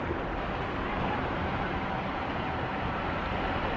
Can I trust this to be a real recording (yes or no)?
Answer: yes